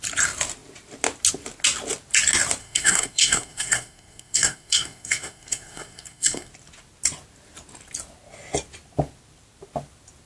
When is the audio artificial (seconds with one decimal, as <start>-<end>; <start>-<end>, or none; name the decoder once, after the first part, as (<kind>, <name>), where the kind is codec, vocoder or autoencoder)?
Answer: 2.6-6.5 (codec, SNAC)